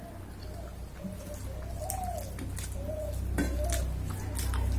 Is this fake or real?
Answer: real